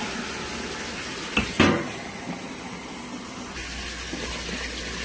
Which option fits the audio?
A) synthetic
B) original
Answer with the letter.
B